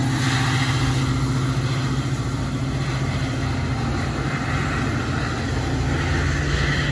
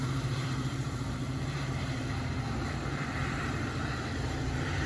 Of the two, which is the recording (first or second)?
first